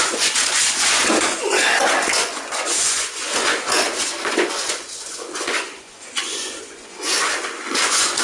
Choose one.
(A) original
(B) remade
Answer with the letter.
B